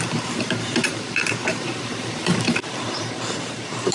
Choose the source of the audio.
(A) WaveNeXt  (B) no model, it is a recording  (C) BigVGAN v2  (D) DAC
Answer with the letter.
C